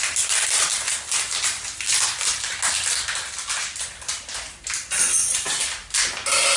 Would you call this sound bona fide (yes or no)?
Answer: yes